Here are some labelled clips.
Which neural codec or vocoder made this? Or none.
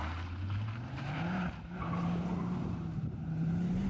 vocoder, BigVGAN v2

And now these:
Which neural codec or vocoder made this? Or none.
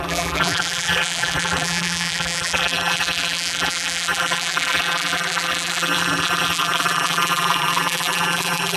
vocoder, BigVGAN v2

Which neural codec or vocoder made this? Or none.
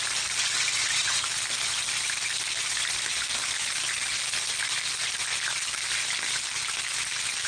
none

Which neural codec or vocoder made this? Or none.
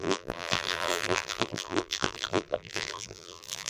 vocoder, BigVGAN v2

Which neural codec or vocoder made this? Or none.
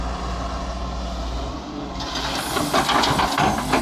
none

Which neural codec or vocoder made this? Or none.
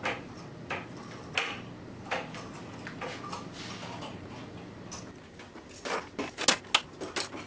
none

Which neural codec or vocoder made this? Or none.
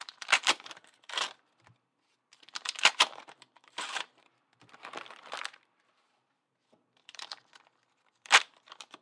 vocoder, BigVGAN v2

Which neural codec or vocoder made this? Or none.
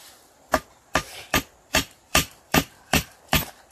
vocoder, BigVGAN v2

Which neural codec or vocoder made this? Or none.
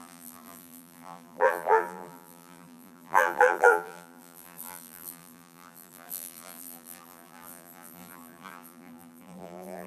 vocoder, BigVGAN v2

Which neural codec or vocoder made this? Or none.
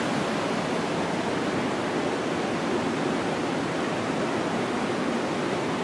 none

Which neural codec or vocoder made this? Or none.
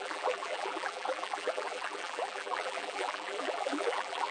vocoder, BigVGAN v2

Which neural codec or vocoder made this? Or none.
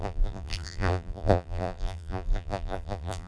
vocoder, BigVGAN v2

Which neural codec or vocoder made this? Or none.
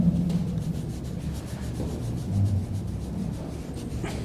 none